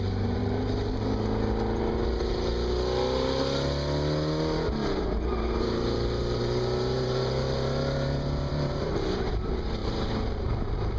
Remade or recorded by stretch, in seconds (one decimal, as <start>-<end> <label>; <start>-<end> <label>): 0.0-0.4 remade; 0.4-5.6 recorded; 5.6-11.0 remade